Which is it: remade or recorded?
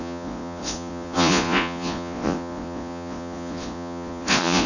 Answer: remade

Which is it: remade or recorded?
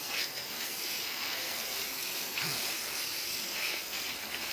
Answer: remade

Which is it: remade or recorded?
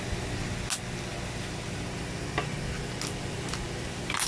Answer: recorded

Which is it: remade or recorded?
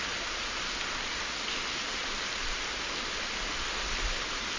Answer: recorded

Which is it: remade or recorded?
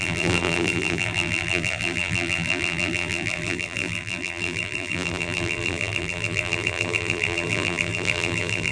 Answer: remade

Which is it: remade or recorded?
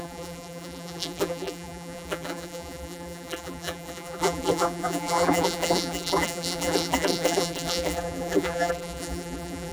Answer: remade